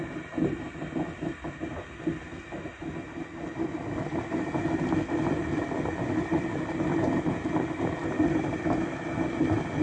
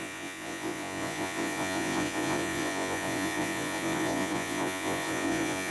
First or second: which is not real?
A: second